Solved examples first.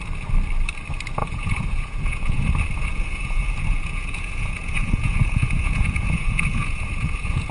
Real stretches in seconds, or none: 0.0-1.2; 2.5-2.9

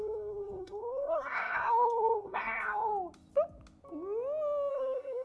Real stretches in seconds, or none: 2.9-4.7

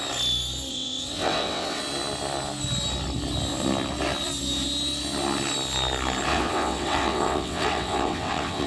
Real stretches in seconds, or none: 0.0-0.7; 1.8-6.3

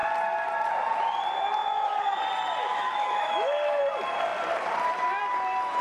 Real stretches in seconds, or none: 0.0-1.6; 2.2-2.6; 3.8-5.8

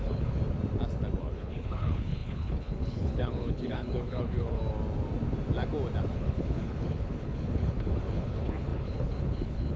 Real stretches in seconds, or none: 0.4-1.2; 4.6-6.1

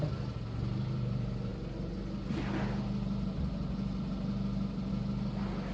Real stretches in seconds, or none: 0.0-5.7

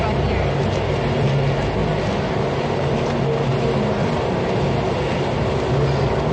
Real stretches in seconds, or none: 0.0-6.3

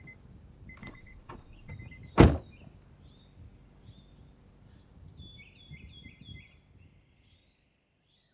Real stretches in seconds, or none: 0.0-0.8; 1.7-8.3